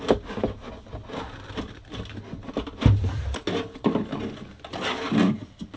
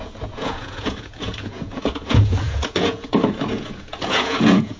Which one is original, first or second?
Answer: first